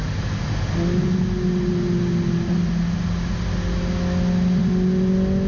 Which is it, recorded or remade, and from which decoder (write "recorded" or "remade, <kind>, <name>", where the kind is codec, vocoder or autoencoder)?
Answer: recorded